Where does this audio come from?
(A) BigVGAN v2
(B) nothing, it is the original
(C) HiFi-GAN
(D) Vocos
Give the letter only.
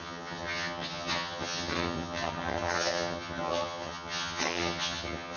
C